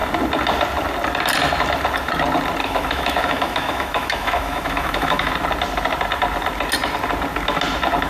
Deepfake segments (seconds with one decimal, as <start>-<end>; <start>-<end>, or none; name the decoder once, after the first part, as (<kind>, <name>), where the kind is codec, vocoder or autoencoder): 2.6-5.3 (autoencoder, DAC-VAE)